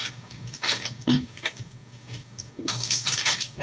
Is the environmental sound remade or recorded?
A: remade